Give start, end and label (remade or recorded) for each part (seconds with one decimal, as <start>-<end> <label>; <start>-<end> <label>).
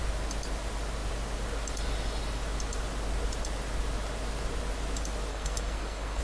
0.0-5.3 recorded; 5.3-6.2 remade